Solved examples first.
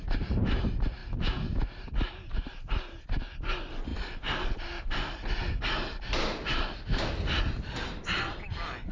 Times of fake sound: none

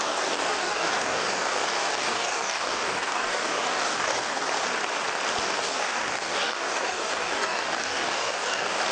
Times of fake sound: 0.0-4.4 (codec, DAC); 5.4-8.9

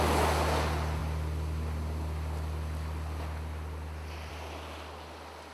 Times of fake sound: none

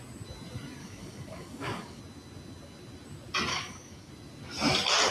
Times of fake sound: 0.8-2.0 (codec, DAC); 3.5-4.1

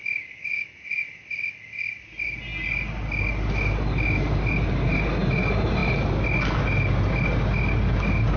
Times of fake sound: 0.0-0.5 (codec, DAC)

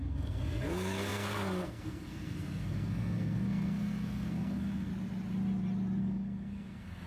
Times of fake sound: 0.0-4.9 (codec, SNAC); 6.0-7.1

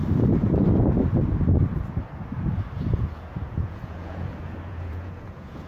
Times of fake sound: 2.9-5.7 (vocoder, Vocos)